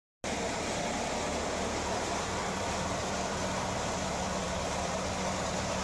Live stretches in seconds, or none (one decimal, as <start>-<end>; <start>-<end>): 0.0-1.4; 4.9-5.8